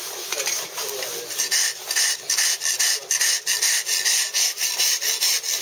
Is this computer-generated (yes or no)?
no